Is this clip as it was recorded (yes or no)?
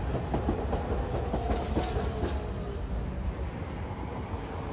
yes